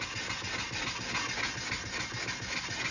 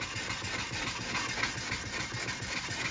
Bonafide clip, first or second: first